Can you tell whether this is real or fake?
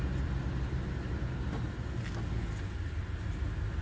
real